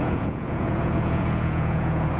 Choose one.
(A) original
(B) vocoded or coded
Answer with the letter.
B